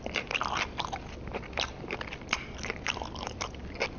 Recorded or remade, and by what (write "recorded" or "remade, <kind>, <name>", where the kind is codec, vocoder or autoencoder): recorded